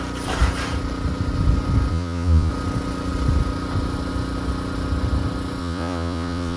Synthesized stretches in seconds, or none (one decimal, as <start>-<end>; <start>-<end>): 1.9-2.5; 5.6-6.6

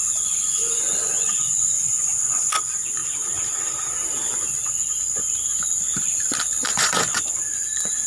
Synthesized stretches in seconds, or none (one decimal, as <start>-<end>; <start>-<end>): 0.0-3.0; 6.6-8.1

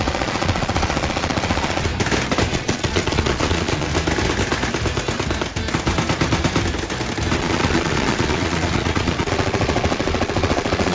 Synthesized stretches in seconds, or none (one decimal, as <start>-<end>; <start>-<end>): 0.0-1.9; 2.5-3.9; 7.4-10.9

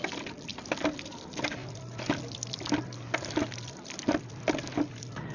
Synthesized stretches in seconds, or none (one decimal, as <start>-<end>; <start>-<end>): none